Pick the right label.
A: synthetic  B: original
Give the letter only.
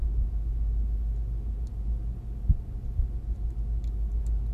B